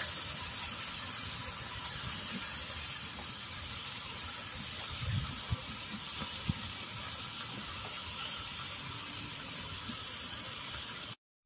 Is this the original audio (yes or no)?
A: yes